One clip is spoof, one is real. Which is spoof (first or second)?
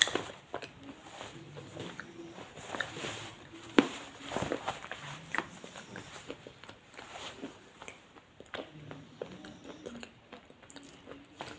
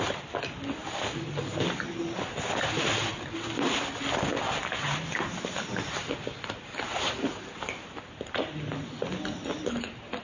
first